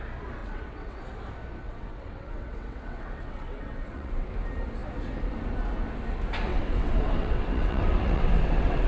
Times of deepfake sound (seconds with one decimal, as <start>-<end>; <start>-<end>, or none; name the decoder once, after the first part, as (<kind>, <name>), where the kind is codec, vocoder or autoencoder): 0.4-1.0 (vocoder, WaveNeXt); 1.6-4.3; 6.5-8.9